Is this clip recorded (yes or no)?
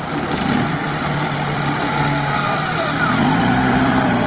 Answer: no